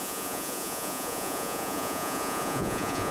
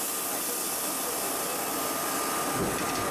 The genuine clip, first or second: second